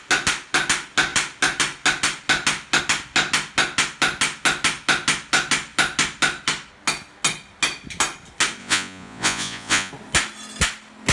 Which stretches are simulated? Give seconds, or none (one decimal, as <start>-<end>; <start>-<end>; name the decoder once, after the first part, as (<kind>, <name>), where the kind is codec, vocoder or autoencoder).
8.6-9.9 (vocoder, Vocos)